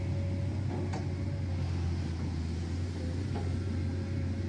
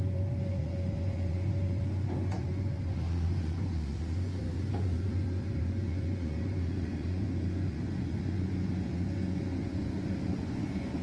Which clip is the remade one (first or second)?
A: second